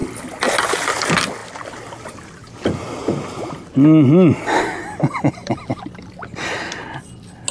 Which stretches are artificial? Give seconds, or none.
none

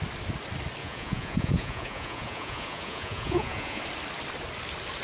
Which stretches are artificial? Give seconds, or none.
0.8-3.8 (vocoder, Vocos)